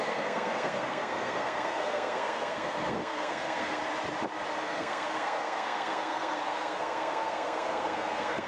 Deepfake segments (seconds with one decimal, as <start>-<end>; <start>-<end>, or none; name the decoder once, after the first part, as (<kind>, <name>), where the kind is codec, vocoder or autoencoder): 0.0-3.8 (codec, SNAC); 4.6-8.5